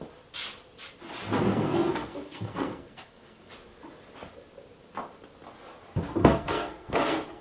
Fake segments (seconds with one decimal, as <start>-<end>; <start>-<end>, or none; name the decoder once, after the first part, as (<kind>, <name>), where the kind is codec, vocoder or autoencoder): 1.5-3.5 (codec, SNAC); 6.2-7.4